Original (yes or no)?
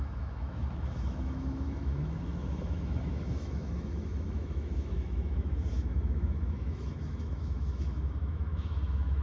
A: no